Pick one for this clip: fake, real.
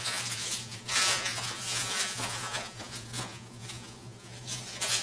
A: fake